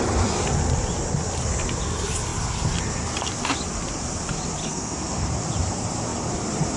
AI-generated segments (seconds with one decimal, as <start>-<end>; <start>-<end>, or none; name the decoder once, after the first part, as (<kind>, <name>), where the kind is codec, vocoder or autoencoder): 4.6-5.3 (codec, SNAC)